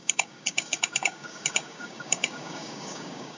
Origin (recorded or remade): remade